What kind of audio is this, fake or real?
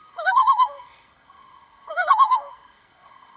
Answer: fake